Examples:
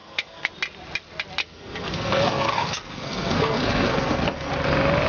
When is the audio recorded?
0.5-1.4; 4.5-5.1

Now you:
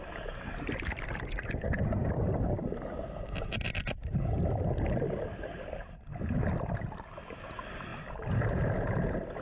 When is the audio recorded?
0.0-9.4

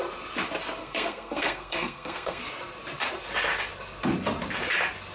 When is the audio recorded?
0.0-0.8; 2.4-5.1

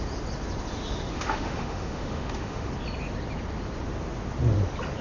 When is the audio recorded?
0.0-1.1; 2.7-5.0

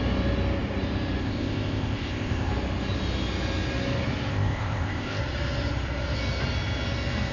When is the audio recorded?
0.0-1.2; 2.5-4.3; 5.2-7.3

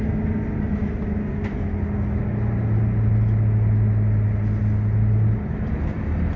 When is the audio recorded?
0.0-6.4

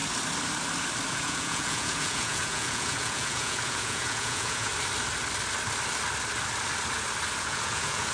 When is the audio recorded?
0.0-1.1; 4.7-7.4

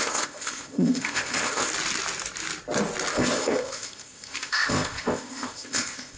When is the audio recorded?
1.7-3.1